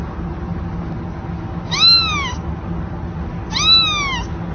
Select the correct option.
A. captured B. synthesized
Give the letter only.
A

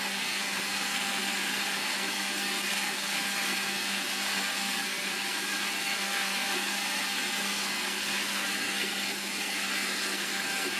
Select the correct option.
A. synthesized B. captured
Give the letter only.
A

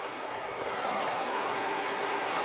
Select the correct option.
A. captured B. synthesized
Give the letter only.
B